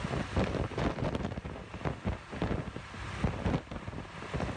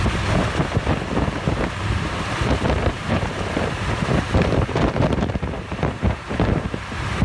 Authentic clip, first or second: first